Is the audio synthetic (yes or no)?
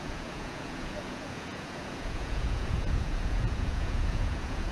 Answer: yes